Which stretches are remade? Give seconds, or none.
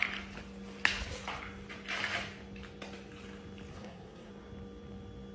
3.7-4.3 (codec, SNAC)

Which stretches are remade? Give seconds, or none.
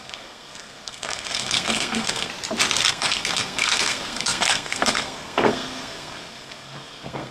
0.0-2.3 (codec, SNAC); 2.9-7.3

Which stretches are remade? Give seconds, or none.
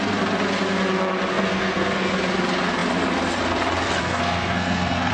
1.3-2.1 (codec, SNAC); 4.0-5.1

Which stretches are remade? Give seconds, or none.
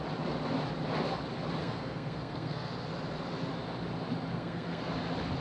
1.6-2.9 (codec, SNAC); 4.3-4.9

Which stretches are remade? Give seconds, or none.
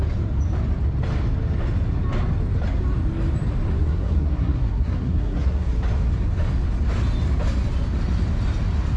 3.8-5.7 (codec, SNAC)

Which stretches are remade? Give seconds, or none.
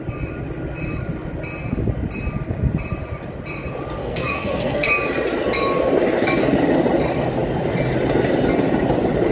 4.0-4.9 (codec, SNAC)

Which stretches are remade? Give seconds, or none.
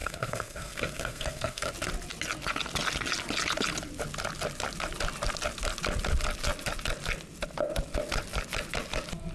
0.0-1.7 (codec, SNAC)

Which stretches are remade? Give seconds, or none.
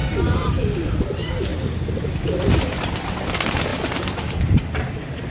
none